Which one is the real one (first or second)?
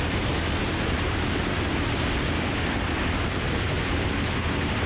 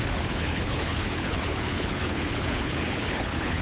first